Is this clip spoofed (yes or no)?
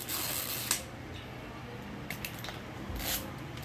no